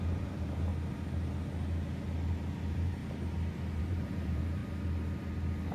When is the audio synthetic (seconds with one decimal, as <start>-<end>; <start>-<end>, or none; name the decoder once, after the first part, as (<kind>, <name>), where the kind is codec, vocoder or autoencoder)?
0.0-0.7 (vocoder, BigVGAN v2); 2.5-3.0; 3.8-4.6